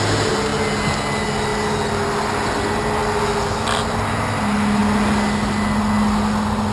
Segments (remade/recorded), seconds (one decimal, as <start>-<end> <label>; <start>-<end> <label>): 0.0-6.7 recorded